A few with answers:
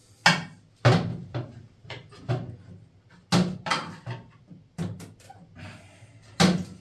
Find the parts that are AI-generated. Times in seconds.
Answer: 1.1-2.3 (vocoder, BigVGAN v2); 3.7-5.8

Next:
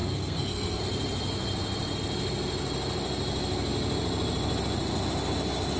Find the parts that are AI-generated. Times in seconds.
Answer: 0.0-0.8 (codec, SNAC)

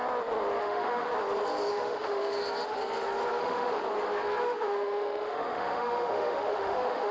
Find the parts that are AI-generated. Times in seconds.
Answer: 0.6-1.1 (autoencoder, DAC-VAE); 1.7-2.4; 3.4-3.8; 4.4-7.1

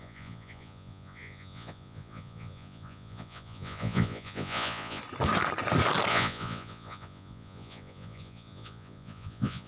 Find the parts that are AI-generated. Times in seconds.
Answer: 0.0-5.0 (vocoder, Vocos); 6.1-9.7

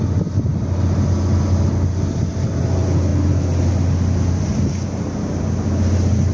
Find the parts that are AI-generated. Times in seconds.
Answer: none

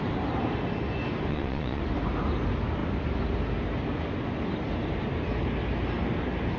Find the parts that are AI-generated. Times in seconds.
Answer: 1.3-1.8 (vocoder, Vocos)